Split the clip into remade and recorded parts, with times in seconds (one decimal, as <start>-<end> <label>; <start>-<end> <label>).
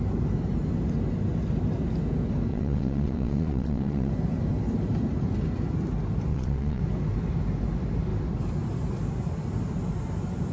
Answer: 0.0-2.5 recorded; 2.5-4.1 remade; 4.1-6.3 recorded; 6.3-6.8 remade; 6.8-10.5 recorded